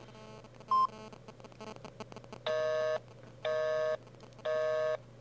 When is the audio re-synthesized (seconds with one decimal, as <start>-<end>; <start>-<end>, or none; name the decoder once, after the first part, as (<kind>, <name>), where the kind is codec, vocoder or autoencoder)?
none